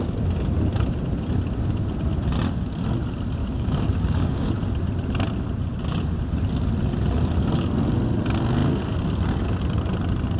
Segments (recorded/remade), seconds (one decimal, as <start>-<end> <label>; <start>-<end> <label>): 0.0-3.4 recorded; 3.4-4.5 remade; 4.5-10.4 recorded